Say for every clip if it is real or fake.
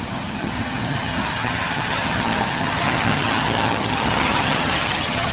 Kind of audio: fake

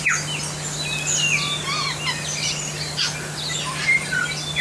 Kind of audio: real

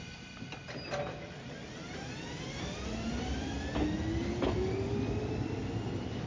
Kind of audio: real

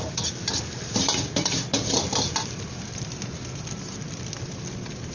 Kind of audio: real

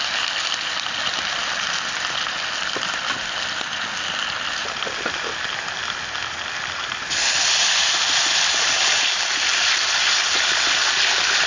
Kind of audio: real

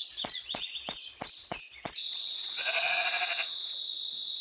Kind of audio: fake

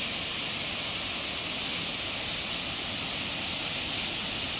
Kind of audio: real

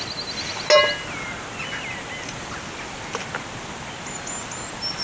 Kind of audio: real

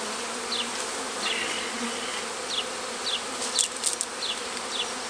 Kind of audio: real